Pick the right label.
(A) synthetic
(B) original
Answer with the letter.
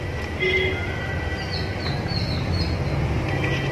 B